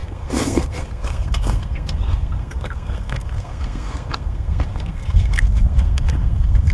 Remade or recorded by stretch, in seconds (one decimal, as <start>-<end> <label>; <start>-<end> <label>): 0.0-6.7 remade